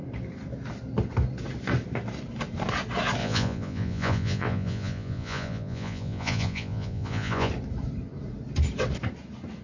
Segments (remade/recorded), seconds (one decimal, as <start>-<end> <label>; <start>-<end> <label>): 0.0-3.2 recorded; 3.2-7.5 remade; 7.5-9.6 recorded